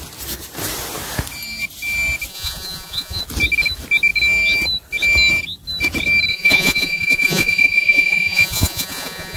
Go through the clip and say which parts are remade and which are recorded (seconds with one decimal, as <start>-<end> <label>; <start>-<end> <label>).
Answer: 0.0-2.3 recorded; 2.3-3.2 remade; 3.2-6.3 recorded; 6.3-9.4 remade